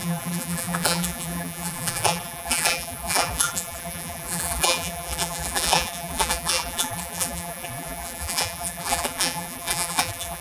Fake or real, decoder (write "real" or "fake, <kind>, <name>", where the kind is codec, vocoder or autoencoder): fake, vocoder, BigVGAN v2